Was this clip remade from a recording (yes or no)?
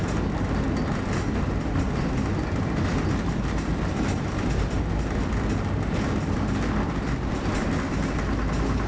no